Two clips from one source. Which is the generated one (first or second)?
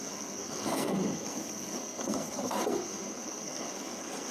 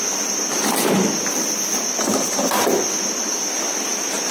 first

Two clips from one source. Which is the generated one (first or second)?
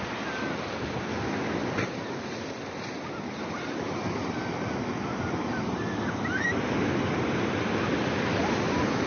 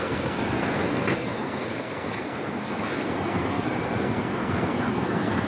second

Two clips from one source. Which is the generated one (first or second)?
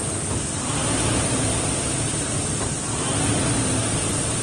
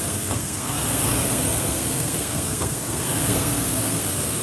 second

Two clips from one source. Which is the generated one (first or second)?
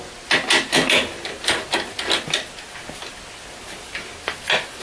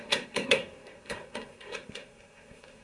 second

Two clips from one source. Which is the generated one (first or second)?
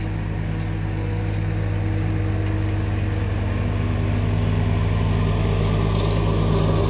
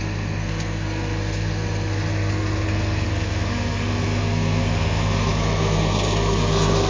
second